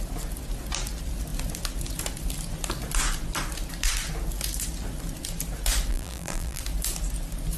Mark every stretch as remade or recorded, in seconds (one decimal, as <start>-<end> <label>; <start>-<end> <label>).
0.0-5.9 recorded; 5.9-6.6 remade; 6.6-7.6 recorded